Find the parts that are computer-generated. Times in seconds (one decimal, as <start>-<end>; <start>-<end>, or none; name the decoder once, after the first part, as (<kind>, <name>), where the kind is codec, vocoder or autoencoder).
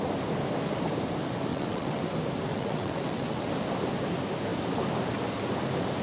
1.5-2.0 (vocoder, WaveNeXt); 2.5-3.5